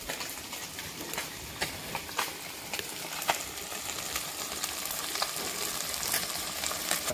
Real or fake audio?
fake